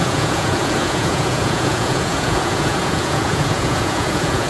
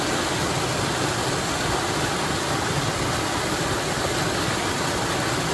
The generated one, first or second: first